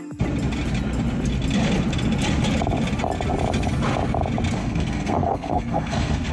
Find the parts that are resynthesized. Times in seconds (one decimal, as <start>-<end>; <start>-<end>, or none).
4.6-6.3